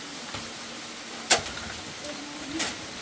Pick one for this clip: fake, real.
real